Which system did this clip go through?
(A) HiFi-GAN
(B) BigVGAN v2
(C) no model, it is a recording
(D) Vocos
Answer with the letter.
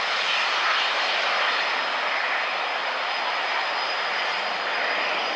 B